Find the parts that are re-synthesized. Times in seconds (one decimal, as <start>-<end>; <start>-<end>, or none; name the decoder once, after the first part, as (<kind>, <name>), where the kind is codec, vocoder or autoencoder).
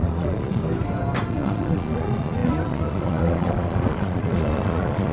0.0-0.6 (vocoder, Vocos); 1.3-5.1